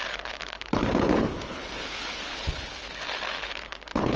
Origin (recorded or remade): remade